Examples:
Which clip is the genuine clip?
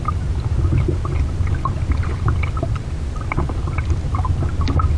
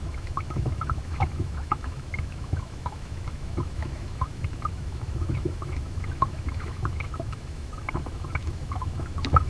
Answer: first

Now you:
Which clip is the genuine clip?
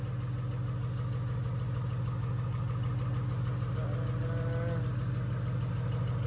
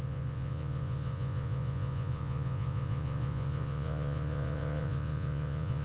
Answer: first